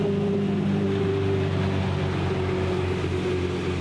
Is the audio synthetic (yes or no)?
no